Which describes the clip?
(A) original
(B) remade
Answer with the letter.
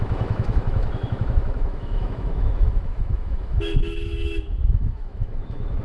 B